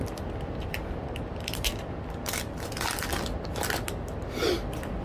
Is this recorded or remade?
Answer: recorded